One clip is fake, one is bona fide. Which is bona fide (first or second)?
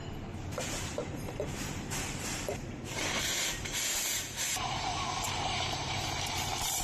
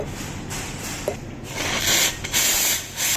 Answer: second